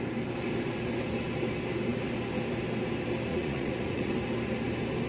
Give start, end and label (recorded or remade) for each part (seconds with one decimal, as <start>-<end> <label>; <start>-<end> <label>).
0.0-3.3 recorded; 3.3-4.1 remade; 4.1-5.1 recorded

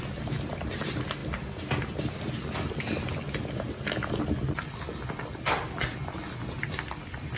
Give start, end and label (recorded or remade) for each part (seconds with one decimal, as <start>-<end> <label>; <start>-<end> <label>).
0.0-7.4 recorded

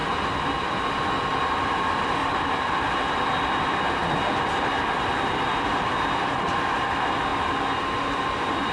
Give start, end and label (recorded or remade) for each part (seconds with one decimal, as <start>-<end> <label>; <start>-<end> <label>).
0.0-2.2 recorded; 2.2-2.7 remade; 2.7-8.7 recorded

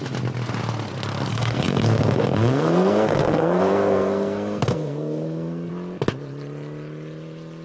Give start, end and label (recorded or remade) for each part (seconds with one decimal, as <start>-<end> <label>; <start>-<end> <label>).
0.0-1.3 recorded; 1.3-5.7 remade; 5.7-7.6 recorded

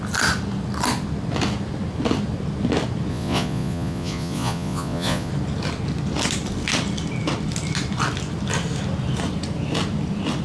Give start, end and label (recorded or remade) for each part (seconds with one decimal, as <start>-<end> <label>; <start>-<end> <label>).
0.0-3.1 recorded; 3.1-5.3 remade; 5.3-10.4 recorded

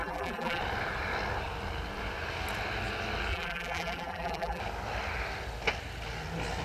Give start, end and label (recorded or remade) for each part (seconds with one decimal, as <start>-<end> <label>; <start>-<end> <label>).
0.0-0.6 remade; 0.6-3.3 recorded; 3.3-4.6 remade; 4.6-6.6 recorded